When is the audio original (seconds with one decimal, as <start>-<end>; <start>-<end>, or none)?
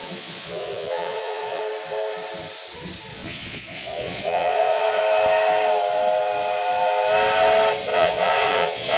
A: 1.6-3.1; 5.0-7.9